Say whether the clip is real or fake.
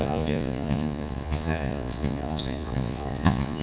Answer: fake